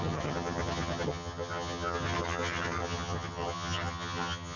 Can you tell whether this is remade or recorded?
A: remade